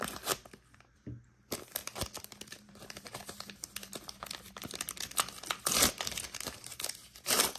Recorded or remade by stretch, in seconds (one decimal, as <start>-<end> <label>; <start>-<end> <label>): 0.0-7.6 recorded